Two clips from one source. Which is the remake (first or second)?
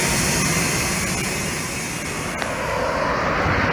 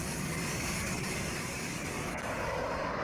second